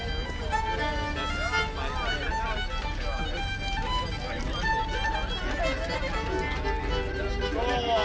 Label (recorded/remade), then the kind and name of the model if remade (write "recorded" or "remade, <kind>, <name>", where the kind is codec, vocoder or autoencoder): recorded